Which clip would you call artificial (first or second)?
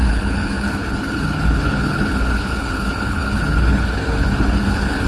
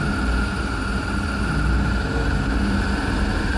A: first